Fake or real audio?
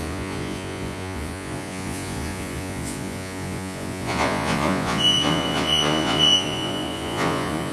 fake